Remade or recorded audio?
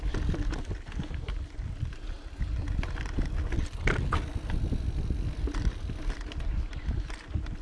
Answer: recorded